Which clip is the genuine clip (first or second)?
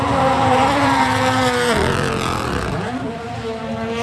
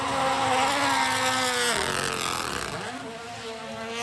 second